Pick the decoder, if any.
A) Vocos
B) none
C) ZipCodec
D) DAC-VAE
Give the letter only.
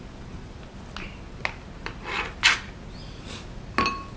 B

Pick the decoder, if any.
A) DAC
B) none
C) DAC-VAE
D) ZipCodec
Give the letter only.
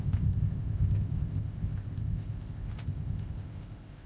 D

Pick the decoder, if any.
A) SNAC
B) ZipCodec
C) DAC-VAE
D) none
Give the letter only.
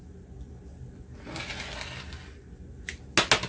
D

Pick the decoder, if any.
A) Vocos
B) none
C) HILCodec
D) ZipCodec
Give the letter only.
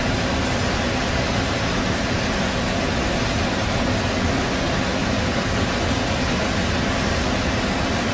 B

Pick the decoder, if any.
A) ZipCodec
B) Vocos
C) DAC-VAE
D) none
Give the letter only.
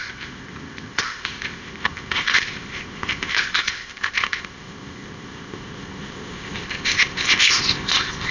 A